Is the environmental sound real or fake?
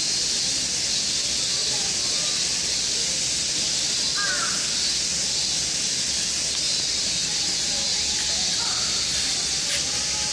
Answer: real